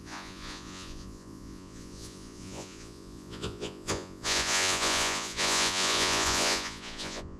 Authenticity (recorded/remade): remade